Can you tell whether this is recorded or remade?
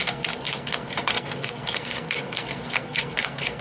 remade